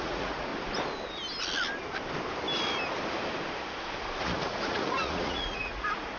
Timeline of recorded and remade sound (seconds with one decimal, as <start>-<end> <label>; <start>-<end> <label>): 0.0-0.5 remade; 0.5-4.2 recorded; 4.2-6.2 remade